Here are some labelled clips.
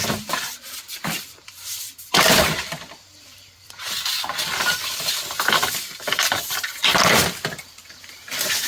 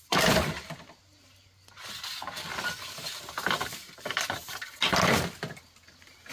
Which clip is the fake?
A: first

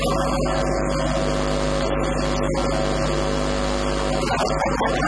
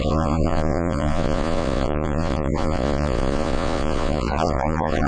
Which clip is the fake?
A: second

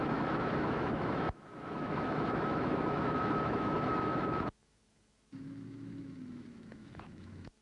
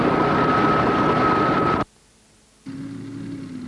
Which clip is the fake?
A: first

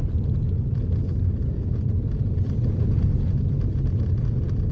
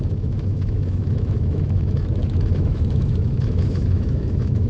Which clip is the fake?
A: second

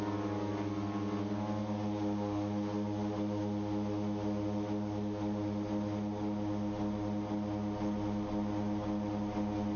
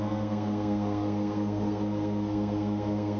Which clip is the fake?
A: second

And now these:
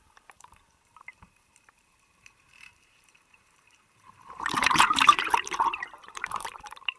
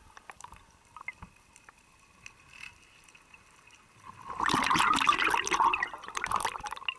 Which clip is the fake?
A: first